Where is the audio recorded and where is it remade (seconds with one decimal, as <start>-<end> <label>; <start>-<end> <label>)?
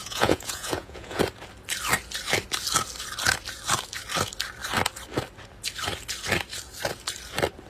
0.0-1.2 remade; 1.2-7.7 recorded